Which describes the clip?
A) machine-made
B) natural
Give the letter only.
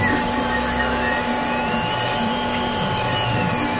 B